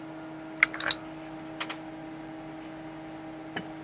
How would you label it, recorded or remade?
recorded